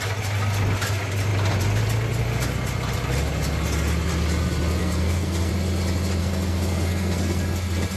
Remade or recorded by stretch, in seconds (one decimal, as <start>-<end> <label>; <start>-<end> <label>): 0.0-4.8 recorded; 4.8-5.5 remade; 5.5-6.2 recorded; 6.2-7.6 remade; 7.6-8.0 recorded